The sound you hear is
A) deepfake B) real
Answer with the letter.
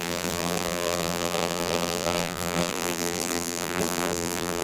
A